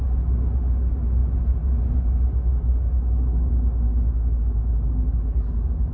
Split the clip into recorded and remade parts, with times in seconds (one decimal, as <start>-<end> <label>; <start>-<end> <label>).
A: 0.0-5.9 recorded